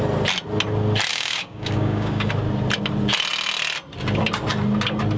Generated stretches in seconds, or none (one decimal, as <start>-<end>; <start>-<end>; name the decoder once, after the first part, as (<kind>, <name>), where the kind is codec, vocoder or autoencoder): 1.1-2.3 (codec, DAC)